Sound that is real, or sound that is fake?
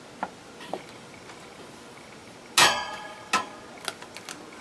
real